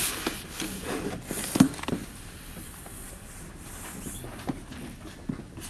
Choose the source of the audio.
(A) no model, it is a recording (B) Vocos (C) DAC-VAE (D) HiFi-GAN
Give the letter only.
A